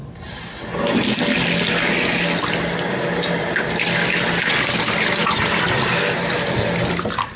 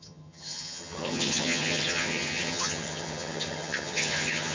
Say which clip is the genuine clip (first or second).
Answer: first